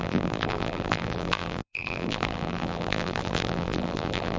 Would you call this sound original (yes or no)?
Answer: no